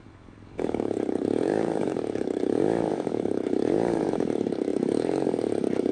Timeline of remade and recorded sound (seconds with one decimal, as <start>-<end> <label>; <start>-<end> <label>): 0.0-5.9 remade